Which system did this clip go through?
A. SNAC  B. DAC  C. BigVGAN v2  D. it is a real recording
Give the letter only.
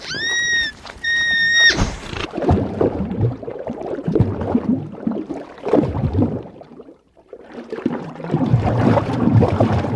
C